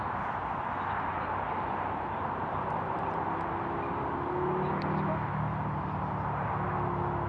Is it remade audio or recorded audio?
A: recorded